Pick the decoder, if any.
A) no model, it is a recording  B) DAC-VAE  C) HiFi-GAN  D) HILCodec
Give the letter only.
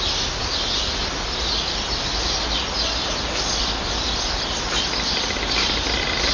A